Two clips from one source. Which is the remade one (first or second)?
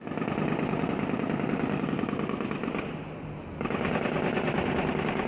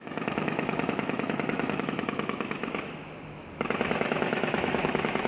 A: second